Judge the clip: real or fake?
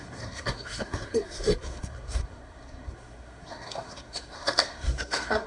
fake